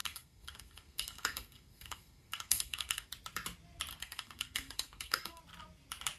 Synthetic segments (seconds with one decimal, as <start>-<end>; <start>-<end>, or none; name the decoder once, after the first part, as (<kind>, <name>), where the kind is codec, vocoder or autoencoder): 0.0-3.1 (codec, SNAC); 3.9-5.4